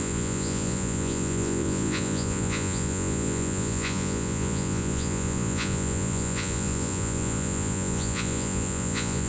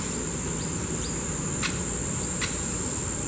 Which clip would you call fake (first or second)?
first